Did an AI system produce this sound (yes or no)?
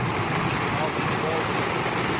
no